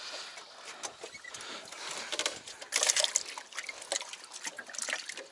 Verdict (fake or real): real